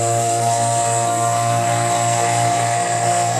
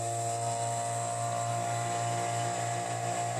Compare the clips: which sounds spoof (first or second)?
first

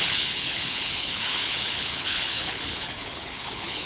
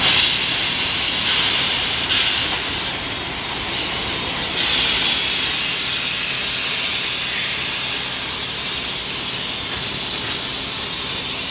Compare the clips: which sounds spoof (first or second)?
first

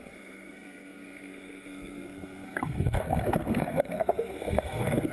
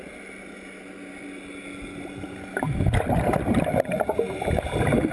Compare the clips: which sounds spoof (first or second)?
first